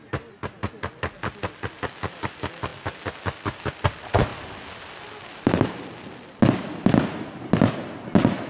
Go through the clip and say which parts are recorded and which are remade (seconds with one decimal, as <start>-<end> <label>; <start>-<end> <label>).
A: 0.0-8.5 recorded